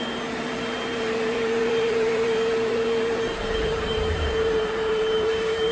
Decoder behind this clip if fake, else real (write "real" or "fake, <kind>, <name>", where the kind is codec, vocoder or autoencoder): fake, vocoder, BigVGAN v2